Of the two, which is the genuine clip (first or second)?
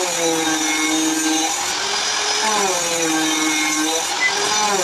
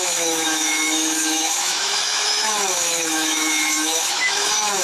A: first